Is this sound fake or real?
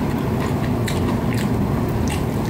real